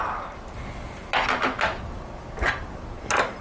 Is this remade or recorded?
recorded